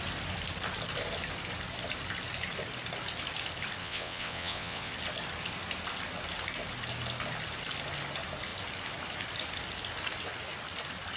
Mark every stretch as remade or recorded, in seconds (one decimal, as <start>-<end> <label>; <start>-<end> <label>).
0.0-3.8 recorded; 3.8-4.9 remade; 4.9-11.2 recorded